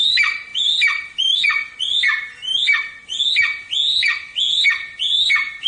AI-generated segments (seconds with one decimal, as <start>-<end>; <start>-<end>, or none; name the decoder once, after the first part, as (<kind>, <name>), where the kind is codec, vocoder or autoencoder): none